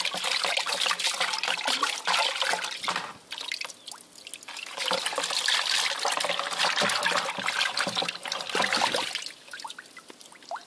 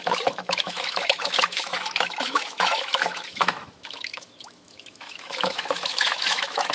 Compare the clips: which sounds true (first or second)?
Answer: first